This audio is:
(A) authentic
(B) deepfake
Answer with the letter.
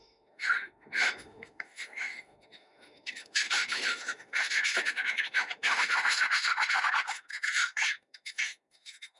B